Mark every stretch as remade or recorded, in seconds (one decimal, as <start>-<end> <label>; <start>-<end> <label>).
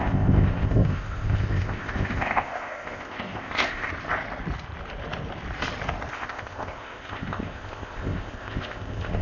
0.0-3.9 remade; 3.9-6.1 recorded; 6.1-9.2 remade